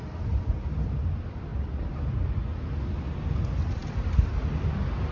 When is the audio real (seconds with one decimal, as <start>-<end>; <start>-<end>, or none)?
0.0-5.1